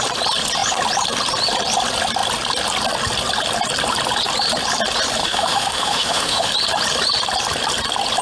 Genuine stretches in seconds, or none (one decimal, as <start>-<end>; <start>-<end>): 0.0-5.2; 6.5-8.2